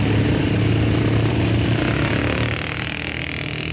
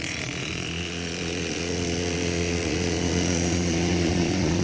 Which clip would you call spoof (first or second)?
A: second